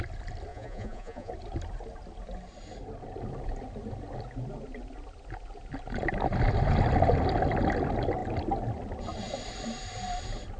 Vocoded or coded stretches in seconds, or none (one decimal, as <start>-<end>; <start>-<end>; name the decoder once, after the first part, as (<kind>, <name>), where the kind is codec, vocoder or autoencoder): 0.5-1.3 (vocoder, Vocos)